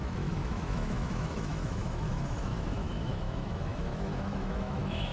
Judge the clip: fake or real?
fake